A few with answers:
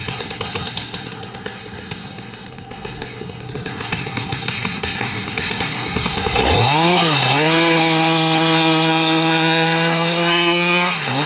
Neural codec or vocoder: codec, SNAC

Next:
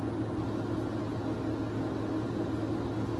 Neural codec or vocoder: none